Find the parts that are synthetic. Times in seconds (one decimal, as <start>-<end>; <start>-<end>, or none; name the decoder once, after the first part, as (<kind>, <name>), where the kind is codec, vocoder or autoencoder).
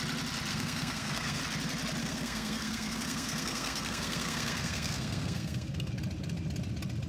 0.5-1.4 (codec, SNAC); 2.0-5.9